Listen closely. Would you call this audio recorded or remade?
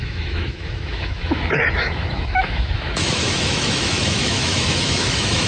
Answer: remade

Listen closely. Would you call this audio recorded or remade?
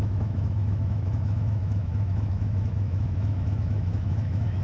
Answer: remade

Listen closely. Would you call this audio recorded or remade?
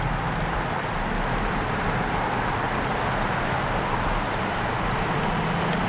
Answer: recorded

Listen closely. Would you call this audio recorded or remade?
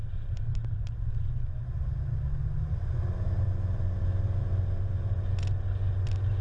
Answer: recorded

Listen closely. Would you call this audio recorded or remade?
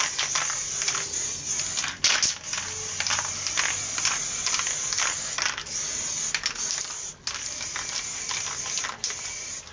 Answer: recorded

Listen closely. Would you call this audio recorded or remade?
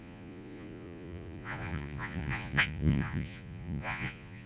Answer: remade